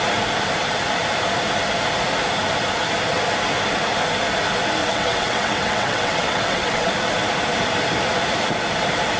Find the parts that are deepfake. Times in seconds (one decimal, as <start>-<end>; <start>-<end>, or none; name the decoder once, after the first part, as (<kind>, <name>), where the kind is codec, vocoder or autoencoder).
4.8-6.9 (vocoder, WaveNeXt)